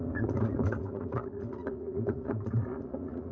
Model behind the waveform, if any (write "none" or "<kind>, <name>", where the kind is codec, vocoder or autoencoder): vocoder, Vocos